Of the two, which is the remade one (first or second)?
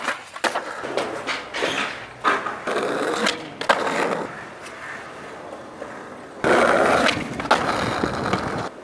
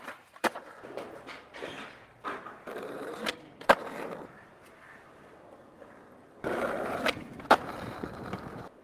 second